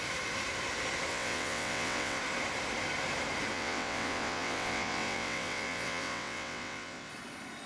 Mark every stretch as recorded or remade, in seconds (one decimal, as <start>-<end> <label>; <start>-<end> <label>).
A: 0.0-1.1 recorded; 1.1-2.2 remade; 2.2-3.5 recorded; 3.5-7.1 remade; 7.1-7.7 recorded